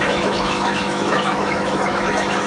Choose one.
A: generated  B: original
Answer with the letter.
A